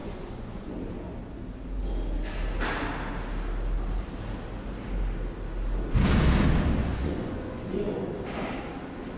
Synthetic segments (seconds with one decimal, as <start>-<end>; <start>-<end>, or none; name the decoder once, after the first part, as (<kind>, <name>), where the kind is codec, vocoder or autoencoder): 0.0-0.7 (vocoder, Vocos); 6.8-8.1